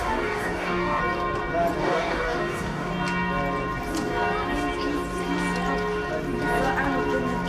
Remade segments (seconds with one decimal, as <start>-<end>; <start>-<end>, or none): 0.0-1.0; 1.8-2.9